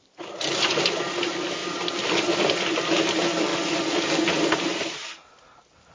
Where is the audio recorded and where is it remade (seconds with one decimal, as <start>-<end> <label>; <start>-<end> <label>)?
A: 0.0-1.6 recorded; 1.6-2.9 remade; 2.9-5.9 recorded